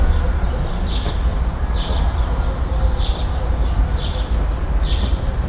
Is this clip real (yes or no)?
yes